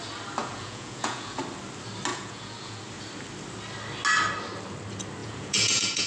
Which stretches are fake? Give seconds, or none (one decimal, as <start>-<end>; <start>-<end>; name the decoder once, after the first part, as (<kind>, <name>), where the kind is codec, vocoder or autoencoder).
0.4-1.4 (vocoder, Vocos); 2.1-2.9; 5.2-6.1